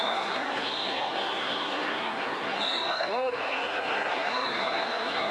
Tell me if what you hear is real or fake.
fake